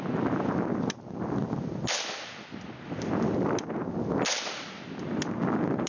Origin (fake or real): real